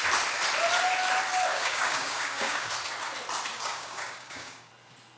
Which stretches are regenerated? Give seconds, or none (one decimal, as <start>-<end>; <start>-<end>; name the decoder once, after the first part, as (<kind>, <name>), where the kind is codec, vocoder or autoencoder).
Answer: 1.5-2.7 (codec, DAC); 3.5-4.7